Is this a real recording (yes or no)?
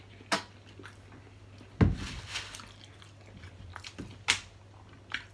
yes